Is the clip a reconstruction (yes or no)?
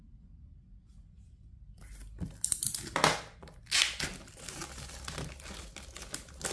no